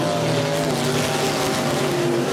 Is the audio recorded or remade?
recorded